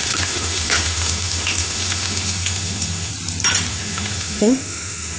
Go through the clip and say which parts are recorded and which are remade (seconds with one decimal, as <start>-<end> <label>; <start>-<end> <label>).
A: 0.0-3.1 remade; 3.1-3.7 recorded; 3.7-5.2 remade